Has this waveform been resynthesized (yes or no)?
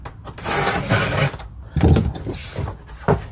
no